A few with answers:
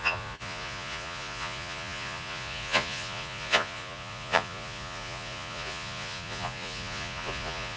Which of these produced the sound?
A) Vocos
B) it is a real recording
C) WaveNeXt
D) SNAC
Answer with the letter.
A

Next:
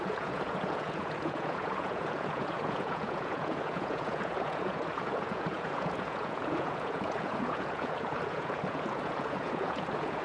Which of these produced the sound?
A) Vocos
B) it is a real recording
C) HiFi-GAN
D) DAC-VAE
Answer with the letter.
A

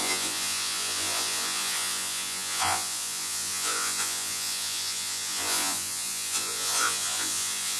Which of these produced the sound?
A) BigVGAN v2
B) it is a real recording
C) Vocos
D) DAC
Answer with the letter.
C